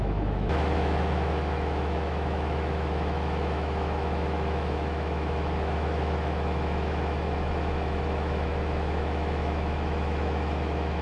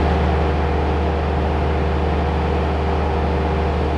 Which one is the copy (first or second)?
first